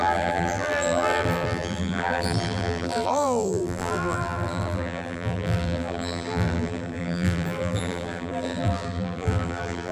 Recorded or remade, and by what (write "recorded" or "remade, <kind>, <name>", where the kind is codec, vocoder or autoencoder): remade, vocoder, BigVGAN v2